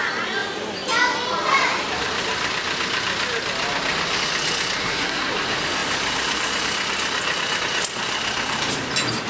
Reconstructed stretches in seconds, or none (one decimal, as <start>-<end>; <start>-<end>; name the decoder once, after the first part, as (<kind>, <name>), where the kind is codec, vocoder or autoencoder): 4.8-5.3 (codec, SNAC)